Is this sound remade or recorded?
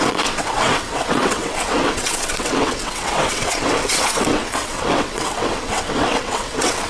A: remade